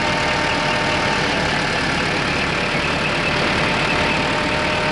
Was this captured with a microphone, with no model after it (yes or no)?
yes